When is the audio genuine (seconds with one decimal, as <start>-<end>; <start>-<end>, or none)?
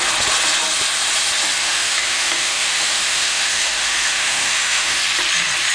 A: 0.0-1.6; 5.0-5.7